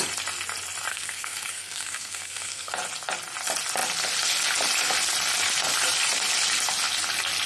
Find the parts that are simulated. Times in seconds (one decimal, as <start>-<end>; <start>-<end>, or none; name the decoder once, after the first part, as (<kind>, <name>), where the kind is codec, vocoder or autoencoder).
0.9-2.7 (codec, SNAC)